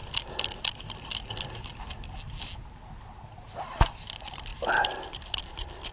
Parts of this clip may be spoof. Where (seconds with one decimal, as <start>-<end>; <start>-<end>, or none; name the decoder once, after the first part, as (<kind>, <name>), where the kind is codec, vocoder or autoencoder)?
none